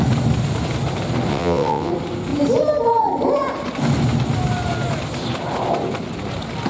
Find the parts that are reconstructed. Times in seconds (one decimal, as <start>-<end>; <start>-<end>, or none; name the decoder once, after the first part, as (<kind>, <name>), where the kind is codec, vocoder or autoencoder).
1.3-1.9 (vocoder, WaveNeXt)